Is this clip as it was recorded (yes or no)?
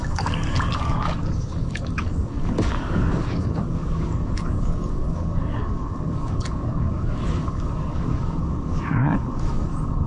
no